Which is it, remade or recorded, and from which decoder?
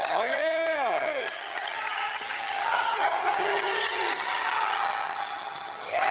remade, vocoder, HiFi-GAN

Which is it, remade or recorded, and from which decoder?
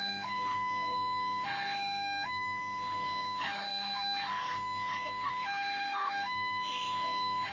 remade, autoencoder, DAC-VAE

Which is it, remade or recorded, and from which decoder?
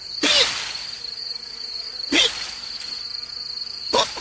recorded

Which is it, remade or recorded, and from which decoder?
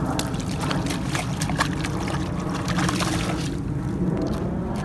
recorded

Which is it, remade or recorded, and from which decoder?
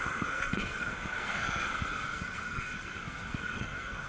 remade, codec, SNAC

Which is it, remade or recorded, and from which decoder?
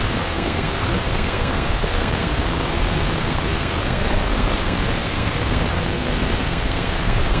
remade, codec, SNAC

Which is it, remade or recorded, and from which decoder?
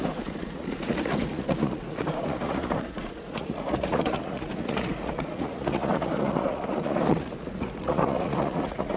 remade, vocoder, Vocos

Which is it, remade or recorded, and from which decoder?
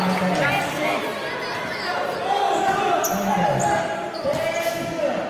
recorded